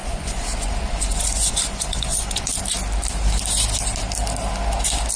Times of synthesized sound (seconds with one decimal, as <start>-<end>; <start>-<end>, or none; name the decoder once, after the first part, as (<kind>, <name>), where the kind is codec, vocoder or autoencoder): 0.0-2.5 (vocoder, Vocos)